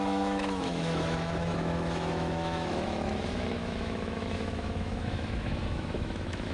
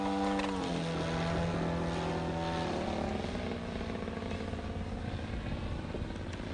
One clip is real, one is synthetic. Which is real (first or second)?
second